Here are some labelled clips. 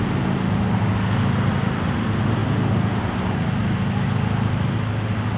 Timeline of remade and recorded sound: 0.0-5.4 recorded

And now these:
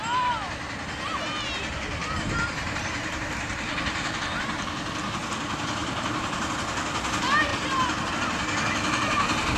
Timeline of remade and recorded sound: 0.0-2.0 recorded; 2.0-4.2 remade; 4.2-5.8 recorded; 5.8-6.5 remade; 6.5-7.5 recorded; 7.5-8.1 remade; 8.1-9.6 recorded

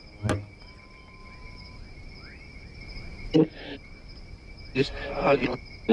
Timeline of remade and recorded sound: 0.0-5.9 recorded

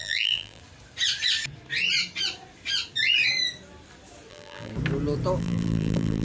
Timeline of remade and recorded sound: 0.0-0.6 remade; 0.6-4.3 recorded; 4.3-4.7 remade; 4.7-5.4 recorded; 5.4-6.2 remade

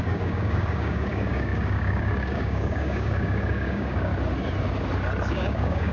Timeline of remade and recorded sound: 0.0-4.1 remade; 4.1-5.3 recorded; 5.3-5.9 remade

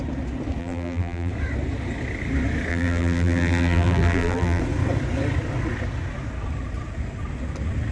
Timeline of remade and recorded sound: 0.0-0.6 recorded; 0.6-1.3 remade; 1.3-2.7 recorded; 2.7-4.6 remade; 4.6-7.9 recorded

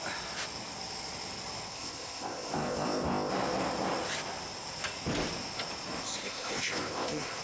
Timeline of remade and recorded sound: 0.0-1.7 recorded; 1.7-3.3 remade; 3.3-6.2 recorded; 6.2-7.4 remade